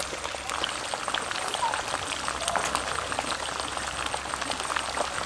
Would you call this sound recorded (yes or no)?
yes